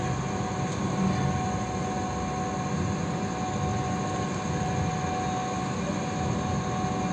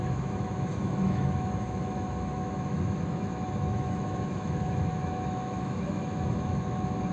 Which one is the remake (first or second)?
second